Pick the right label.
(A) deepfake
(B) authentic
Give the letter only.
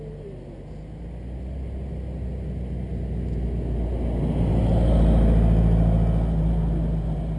B